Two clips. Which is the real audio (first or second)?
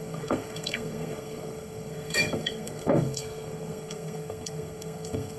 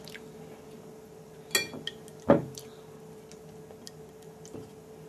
second